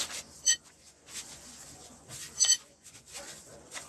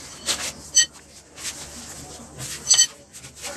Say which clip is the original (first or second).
second